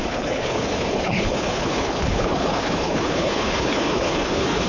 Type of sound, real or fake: fake